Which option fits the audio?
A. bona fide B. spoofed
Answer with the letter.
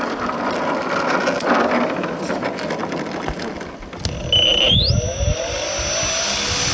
A